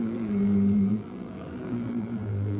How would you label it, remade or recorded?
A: remade